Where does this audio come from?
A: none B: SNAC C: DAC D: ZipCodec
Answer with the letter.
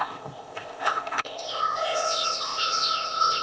D